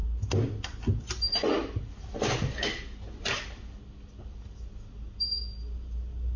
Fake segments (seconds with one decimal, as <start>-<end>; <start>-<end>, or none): none